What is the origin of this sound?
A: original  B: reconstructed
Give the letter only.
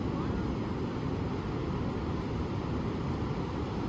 A